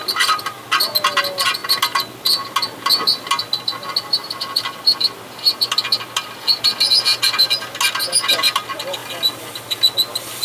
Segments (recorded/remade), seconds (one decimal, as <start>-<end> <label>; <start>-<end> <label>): 0.0-10.4 recorded